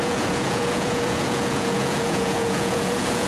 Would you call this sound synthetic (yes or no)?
yes